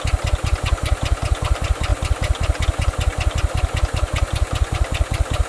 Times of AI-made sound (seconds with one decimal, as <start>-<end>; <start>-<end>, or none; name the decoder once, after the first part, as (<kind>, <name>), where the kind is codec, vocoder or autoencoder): none